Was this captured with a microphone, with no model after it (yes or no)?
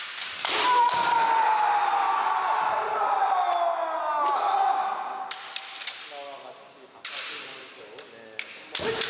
yes